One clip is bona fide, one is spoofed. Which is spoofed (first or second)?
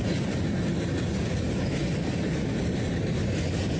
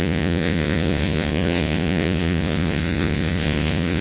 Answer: second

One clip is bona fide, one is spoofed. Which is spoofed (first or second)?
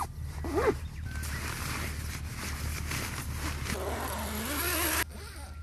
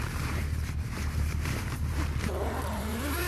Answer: second